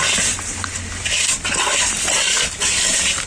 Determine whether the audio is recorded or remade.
recorded